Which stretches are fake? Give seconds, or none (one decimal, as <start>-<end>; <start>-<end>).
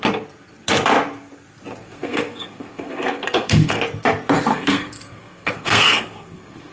1.8-3.8; 4.5-6.7